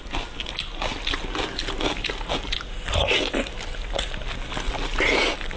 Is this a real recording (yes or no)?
yes